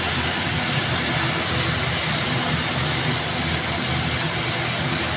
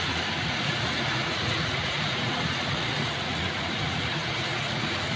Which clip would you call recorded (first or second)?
first